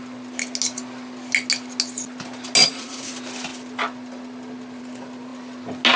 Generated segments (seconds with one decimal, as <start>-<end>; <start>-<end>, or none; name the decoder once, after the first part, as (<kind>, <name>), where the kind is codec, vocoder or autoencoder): 2.6-3.1 (vocoder, Vocos)